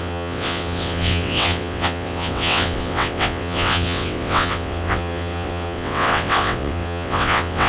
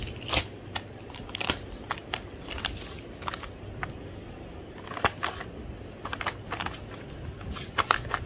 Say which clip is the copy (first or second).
first